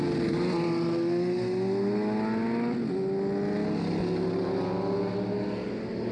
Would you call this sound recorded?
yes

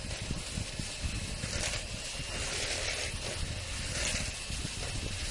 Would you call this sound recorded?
yes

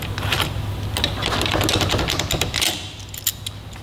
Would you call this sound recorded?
yes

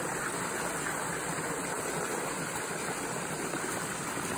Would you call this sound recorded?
yes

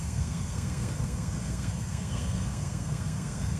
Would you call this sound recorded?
no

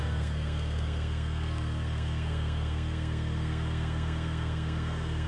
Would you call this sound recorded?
no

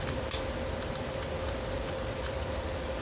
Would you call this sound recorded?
yes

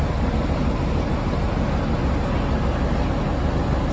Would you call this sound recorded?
yes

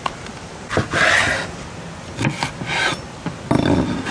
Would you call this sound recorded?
yes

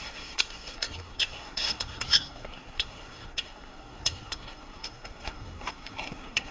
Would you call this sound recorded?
no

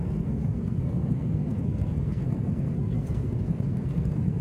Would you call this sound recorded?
no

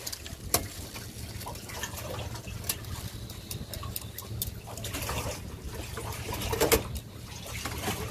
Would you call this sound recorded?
yes